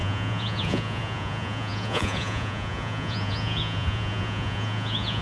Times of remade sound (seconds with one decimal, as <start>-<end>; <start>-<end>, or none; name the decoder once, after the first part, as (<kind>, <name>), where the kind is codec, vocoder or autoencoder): 0.0-5.2 (vocoder, Vocos)